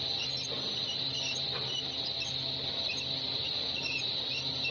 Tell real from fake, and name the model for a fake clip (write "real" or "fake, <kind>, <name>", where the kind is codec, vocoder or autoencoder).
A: real